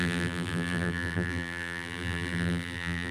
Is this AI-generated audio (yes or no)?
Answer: yes